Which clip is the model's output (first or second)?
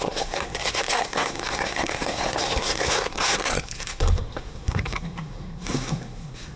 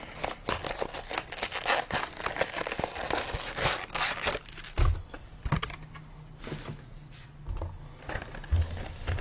first